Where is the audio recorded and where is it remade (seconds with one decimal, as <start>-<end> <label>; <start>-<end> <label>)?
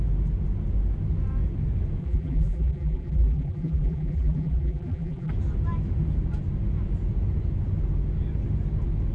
0.0-2.0 recorded; 2.0-5.3 remade; 5.3-9.1 recorded